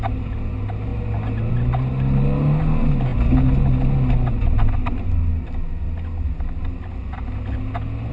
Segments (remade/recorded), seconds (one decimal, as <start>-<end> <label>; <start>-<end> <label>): 0.0-8.1 recorded